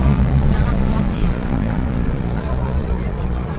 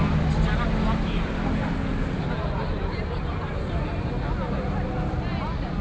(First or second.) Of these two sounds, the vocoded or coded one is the first